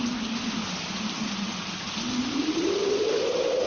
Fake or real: real